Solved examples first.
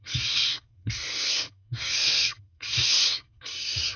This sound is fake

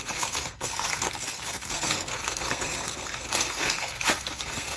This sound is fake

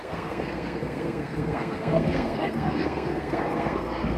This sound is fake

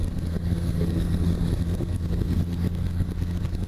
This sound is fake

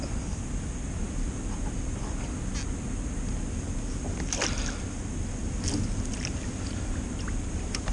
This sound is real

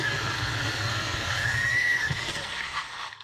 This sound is fake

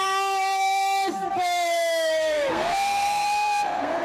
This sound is fake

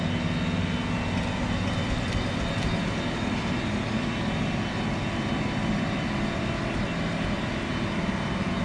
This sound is real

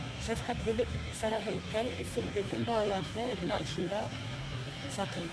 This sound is fake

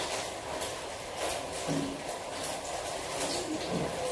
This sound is real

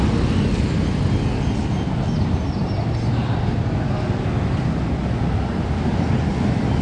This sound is real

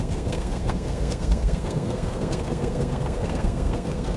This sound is fake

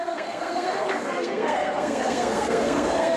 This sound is fake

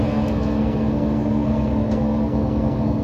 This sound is fake